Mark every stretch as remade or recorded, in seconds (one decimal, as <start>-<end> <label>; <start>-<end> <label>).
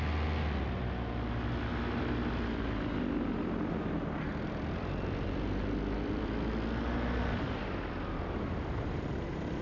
0.0-4.3 recorded; 4.3-9.1 remade; 9.1-9.6 recorded